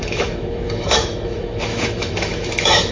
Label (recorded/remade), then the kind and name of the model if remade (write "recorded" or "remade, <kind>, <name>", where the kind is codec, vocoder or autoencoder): remade, autoencoder, DAC-VAE